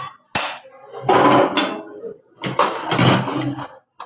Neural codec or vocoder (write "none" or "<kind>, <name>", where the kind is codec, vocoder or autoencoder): none